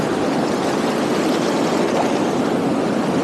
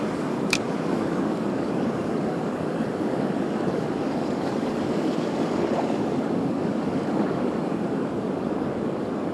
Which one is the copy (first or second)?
second